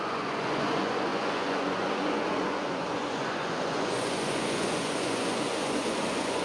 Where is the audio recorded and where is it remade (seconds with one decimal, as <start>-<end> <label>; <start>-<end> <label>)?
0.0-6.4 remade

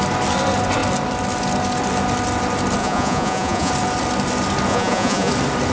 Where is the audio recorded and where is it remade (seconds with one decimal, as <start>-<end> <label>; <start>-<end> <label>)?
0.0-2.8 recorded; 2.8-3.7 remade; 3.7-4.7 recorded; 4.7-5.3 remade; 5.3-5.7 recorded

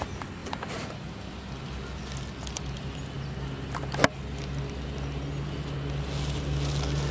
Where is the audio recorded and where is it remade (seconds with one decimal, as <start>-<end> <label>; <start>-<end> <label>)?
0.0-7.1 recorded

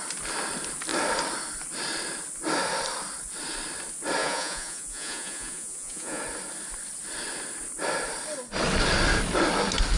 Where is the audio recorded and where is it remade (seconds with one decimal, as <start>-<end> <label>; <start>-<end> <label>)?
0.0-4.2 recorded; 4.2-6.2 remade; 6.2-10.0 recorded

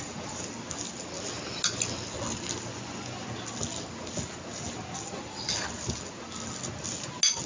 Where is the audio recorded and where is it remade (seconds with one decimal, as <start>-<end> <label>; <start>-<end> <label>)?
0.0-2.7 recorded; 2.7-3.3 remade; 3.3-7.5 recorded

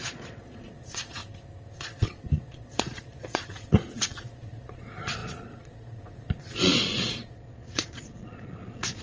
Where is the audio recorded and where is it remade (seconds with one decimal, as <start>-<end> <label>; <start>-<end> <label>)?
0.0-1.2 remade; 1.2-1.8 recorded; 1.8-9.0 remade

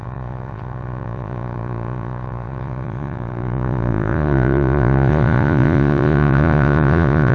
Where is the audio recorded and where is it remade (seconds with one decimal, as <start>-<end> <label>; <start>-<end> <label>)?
0.0-7.3 remade